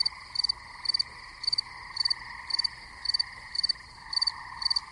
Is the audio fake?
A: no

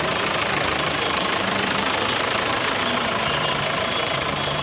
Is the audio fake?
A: yes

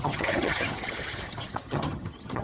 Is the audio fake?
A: yes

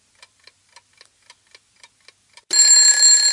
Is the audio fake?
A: no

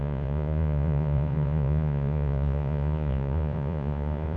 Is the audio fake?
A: yes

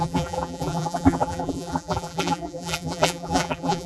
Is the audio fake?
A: yes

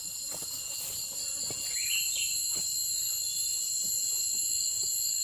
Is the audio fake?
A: no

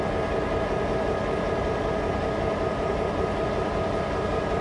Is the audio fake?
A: no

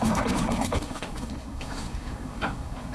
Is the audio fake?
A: yes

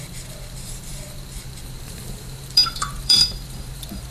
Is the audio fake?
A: yes